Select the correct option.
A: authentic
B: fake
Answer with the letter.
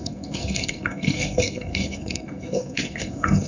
B